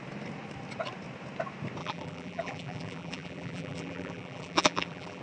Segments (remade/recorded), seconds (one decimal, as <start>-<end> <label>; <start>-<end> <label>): 0.0-1.8 recorded; 1.8-5.2 remade